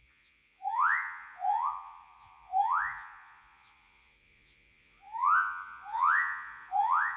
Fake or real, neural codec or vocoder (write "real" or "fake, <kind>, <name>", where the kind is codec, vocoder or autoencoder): fake, vocoder, Vocos